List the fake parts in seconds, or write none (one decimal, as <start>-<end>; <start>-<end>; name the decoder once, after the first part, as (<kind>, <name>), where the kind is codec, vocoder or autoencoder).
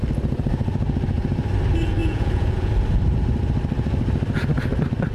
2.0-2.7 (vocoder, Vocos)